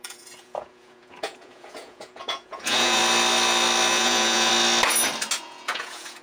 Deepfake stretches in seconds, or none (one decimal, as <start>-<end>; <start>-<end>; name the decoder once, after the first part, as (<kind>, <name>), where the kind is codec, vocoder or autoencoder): 0.0-3.0 (vocoder, Vocos); 3.9-4.5; 5.4-6.2